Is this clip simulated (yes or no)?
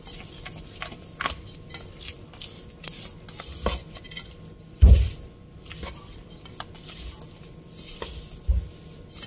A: no